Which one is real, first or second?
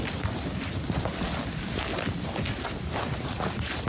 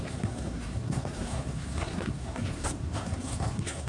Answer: first